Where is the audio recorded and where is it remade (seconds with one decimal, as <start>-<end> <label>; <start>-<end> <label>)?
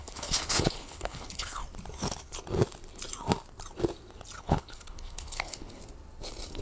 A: 0.0-1.6 remade; 1.6-4.4 recorded; 4.4-5.8 remade; 5.8-6.6 recorded